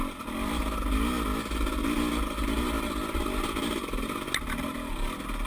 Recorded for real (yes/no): yes